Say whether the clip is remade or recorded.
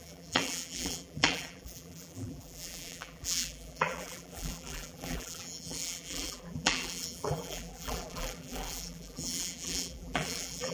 remade